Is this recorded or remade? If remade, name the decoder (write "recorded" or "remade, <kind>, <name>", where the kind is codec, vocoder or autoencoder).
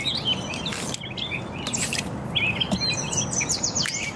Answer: recorded